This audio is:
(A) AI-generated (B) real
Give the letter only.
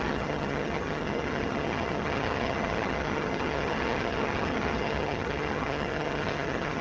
A